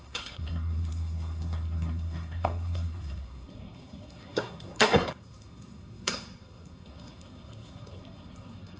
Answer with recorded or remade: remade